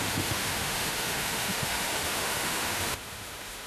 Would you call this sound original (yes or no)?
no